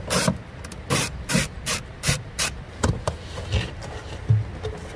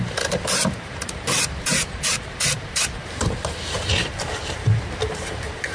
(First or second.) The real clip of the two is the first